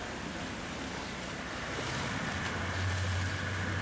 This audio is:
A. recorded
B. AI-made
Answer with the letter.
A